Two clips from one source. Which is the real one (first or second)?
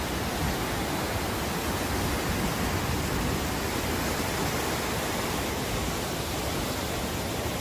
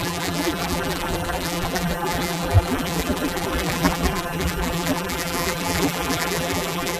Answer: first